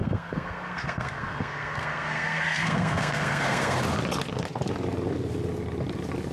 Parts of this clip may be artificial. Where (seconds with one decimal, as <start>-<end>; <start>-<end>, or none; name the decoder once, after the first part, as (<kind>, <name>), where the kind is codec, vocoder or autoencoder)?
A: 0.0-3.8 (codec, SNAC)